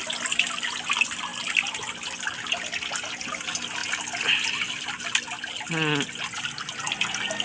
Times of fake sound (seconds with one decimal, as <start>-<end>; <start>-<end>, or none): none